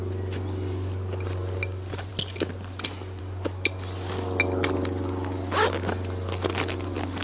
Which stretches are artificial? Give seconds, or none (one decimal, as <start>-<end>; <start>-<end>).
none